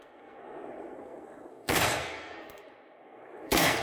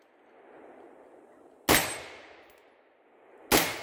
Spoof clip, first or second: first